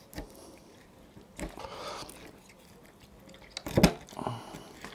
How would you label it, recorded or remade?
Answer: recorded